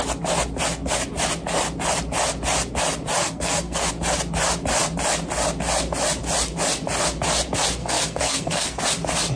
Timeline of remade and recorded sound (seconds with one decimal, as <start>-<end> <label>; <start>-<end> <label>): 0.0-3.2 recorded; 3.2-3.9 remade; 3.9-7.8 recorded; 7.8-8.8 remade; 8.8-9.4 recorded